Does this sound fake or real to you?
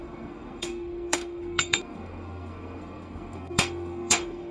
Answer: fake